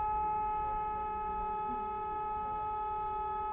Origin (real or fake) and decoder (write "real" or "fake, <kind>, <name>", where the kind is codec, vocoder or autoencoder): fake, autoencoder, DAC-VAE